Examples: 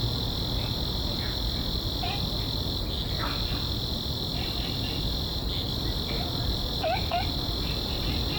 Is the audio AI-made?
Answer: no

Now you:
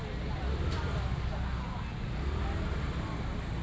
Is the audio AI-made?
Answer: no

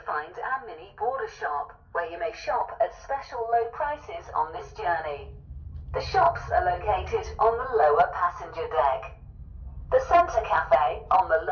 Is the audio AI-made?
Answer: no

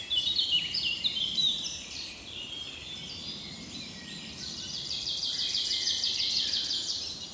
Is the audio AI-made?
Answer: yes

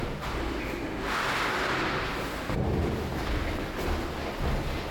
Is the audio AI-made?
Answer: no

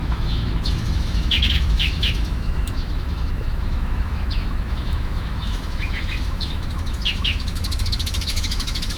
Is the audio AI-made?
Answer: yes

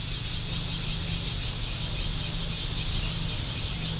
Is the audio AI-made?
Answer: no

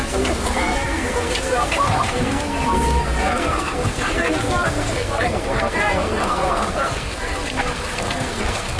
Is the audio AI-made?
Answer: yes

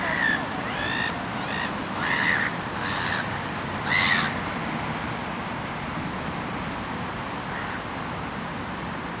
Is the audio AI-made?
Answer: no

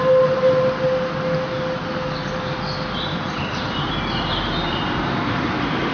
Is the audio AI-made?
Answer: no